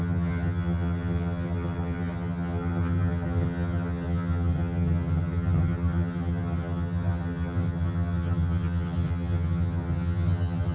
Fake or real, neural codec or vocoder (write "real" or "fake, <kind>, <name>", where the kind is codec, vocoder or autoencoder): fake, vocoder, HiFi-GAN